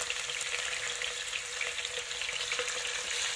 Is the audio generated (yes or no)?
no